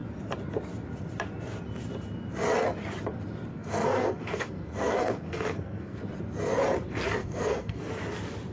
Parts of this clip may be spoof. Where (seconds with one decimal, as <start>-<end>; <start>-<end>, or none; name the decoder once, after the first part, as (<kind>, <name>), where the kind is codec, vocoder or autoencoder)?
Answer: 3.5-6.0 (codec, SNAC); 7.2-7.9